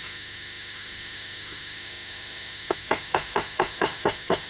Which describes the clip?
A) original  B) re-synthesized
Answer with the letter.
B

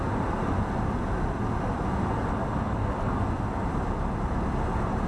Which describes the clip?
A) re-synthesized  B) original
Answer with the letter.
B